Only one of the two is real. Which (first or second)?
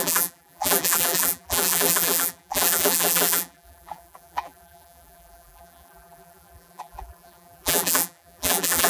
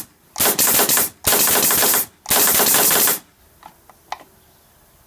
second